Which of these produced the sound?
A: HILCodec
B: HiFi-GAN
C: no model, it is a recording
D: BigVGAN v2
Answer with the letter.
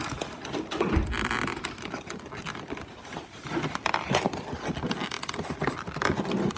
C